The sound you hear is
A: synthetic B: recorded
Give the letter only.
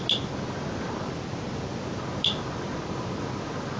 B